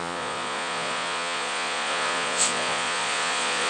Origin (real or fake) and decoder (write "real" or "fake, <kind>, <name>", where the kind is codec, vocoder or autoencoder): fake, vocoder, Vocos